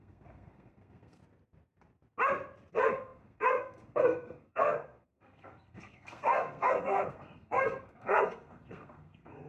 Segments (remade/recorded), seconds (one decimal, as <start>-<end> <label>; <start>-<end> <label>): 0.0-1.2 remade; 1.2-2.7 recorded; 2.7-9.5 remade